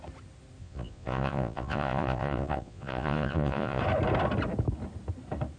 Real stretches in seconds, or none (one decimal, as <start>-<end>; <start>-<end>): 0.0-0.6; 3.8-5.6

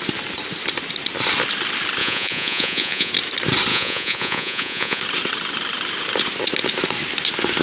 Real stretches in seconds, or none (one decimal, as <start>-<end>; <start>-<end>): 0.0-2.0; 3.1-3.7; 5.0-7.6

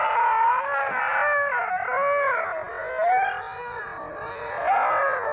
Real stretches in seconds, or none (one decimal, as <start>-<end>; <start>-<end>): 0.0-5.3

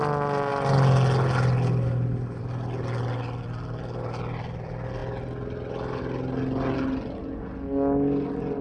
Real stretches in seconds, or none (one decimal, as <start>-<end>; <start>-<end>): 0.0-8.6